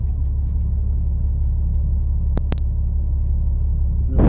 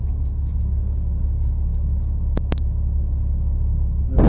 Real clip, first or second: first